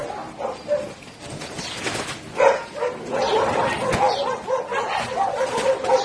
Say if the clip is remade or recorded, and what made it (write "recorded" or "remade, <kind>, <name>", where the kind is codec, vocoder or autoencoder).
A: recorded